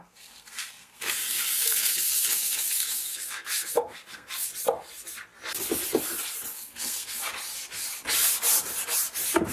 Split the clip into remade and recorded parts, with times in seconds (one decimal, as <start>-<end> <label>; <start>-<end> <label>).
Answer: 0.0-4.5 remade; 4.5-6.5 recorded; 6.5-7.2 remade; 7.2-9.5 recorded